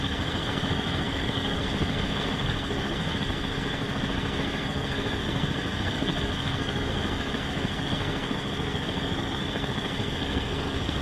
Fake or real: fake